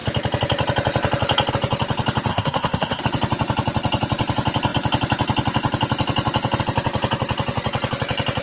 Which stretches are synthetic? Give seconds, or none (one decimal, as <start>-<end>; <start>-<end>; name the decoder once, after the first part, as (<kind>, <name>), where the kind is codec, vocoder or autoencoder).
2.3-3.0 (codec, SNAC)